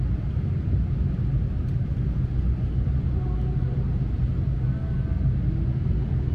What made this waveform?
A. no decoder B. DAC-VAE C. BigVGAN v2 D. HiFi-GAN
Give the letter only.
A